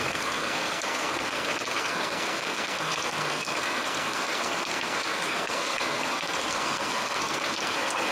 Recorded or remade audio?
remade